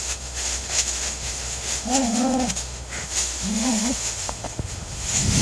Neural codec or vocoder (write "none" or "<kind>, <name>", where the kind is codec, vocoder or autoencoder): autoencoder, DAC-VAE